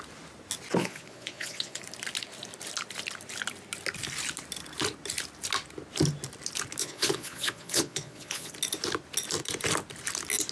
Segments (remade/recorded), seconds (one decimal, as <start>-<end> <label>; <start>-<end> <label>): 0.0-0.8 recorded; 0.8-1.8 remade; 1.8-6.8 recorded; 6.8-8.5 remade; 8.5-10.5 recorded